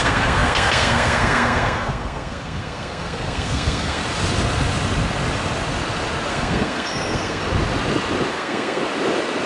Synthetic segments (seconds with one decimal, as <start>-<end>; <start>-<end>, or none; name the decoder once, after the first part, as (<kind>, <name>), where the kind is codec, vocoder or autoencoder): 0.0-4.0 (codec, SNAC); 6.3-7.4; 8.3-8.8